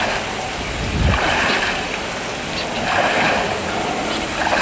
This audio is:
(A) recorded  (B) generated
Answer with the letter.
A